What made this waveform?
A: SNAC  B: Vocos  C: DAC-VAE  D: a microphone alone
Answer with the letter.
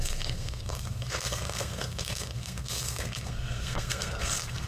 A